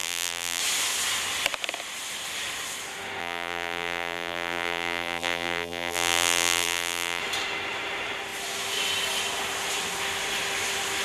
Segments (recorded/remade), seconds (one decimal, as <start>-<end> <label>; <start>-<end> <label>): 0.0-0.6 remade; 0.6-3.2 recorded; 3.2-7.2 remade; 7.2-11.0 recorded